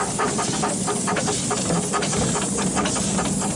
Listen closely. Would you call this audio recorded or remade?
recorded